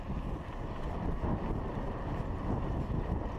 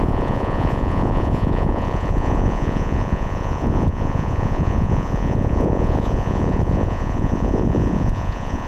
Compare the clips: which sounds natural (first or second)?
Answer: first